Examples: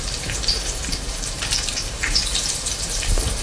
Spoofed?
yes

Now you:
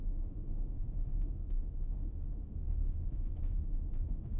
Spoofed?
yes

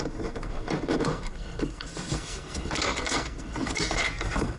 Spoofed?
yes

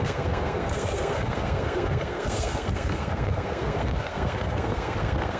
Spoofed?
yes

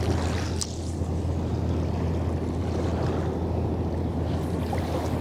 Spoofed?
no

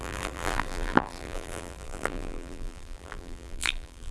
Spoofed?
yes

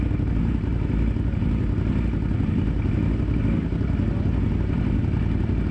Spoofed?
no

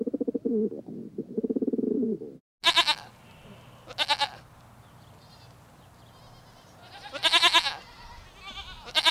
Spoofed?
no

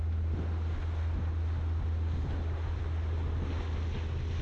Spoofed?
no